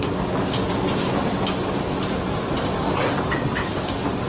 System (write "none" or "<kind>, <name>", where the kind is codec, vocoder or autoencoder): none